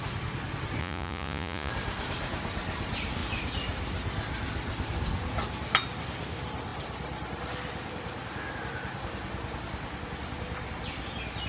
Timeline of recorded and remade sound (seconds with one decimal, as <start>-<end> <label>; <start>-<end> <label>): 0.0-0.8 recorded; 0.8-1.7 remade; 1.7-11.5 recorded